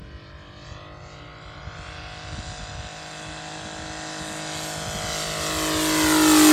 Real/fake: real